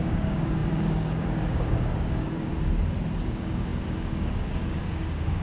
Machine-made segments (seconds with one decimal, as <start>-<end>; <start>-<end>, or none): 0.0-2.5; 3.3-5.4

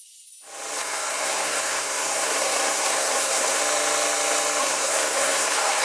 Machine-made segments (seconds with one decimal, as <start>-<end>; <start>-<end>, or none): 0.8-3.6; 4.6-5.8

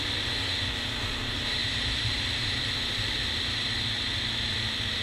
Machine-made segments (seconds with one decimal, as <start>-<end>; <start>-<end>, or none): 1.6-2.6

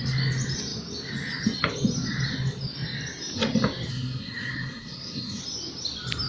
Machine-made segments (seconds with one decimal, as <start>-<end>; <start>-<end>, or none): 3.9-5.4

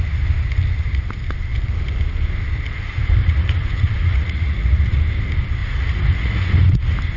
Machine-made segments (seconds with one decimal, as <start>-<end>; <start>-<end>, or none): 3.2-5.0; 5.6-6.8

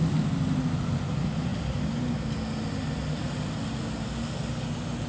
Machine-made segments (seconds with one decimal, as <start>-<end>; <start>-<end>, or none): none

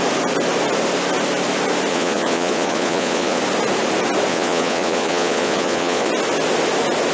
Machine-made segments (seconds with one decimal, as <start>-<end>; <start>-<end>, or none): 1.9-3.4; 4.3-6.1